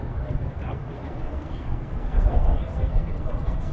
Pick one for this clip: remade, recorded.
remade